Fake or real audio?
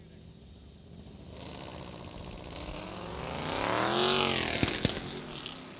real